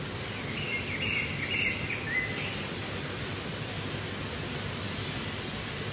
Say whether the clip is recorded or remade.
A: recorded